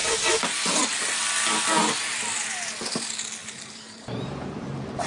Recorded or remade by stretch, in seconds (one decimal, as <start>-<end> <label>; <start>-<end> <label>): 0.0-0.8 remade; 0.8-3.4 recorded; 3.4-5.1 remade